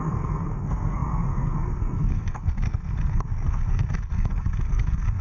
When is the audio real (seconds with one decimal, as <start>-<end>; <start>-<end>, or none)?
none